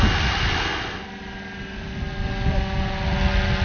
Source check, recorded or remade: recorded